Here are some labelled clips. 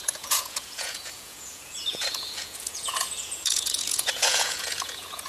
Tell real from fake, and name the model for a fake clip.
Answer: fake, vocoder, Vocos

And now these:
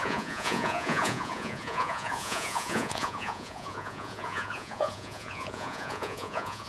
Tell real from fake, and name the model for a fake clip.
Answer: fake, vocoder, Vocos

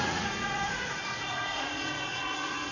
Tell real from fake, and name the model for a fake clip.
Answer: fake, vocoder, Vocos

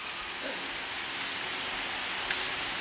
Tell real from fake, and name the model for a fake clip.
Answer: real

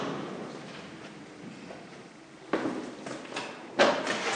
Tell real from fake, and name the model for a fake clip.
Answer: real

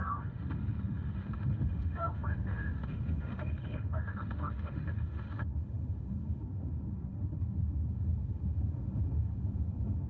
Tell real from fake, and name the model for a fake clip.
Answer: fake, autoencoder, DAC-VAE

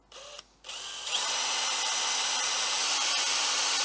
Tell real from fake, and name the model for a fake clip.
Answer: real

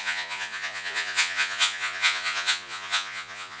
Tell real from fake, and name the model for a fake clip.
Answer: fake, vocoder, Vocos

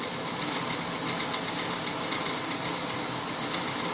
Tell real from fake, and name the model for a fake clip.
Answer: real